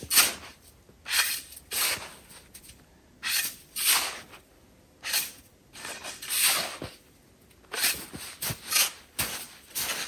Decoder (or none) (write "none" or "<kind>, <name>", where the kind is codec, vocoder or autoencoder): none